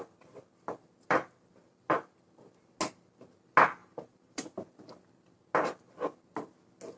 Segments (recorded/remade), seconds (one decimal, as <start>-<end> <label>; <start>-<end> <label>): 0.0-3.8 recorded; 3.8-4.4 remade; 4.4-7.0 recorded